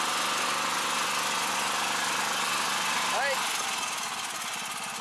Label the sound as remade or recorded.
recorded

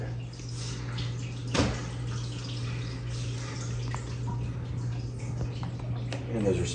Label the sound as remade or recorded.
recorded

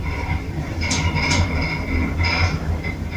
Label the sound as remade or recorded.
remade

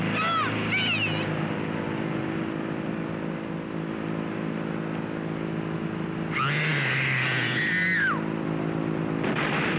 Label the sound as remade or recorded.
recorded